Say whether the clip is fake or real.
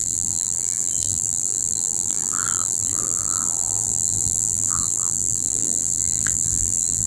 fake